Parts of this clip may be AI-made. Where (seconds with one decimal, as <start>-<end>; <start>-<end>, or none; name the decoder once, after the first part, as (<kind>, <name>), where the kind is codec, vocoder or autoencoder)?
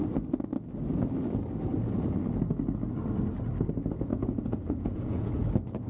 4.1-5.3 (vocoder, Vocos)